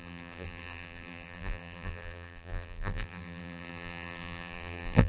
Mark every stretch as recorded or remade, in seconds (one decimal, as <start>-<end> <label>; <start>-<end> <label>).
0.0-5.1 remade